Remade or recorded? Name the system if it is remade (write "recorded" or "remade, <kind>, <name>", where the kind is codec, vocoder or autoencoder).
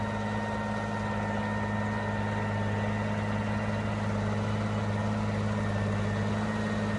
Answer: recorded